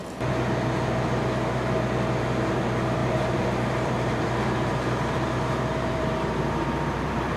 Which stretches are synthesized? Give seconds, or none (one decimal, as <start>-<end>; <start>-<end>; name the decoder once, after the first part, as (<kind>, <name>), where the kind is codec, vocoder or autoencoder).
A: 3.0-7.4 (vocoder, BigVGAN v2)